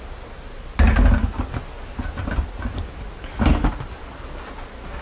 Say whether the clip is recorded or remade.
recorded